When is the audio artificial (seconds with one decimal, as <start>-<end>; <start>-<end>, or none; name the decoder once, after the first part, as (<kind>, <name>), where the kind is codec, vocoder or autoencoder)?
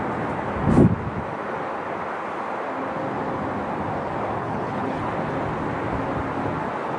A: 4.4-5.1 (codec, HILCodec)